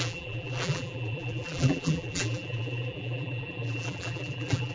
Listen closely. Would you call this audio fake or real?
fake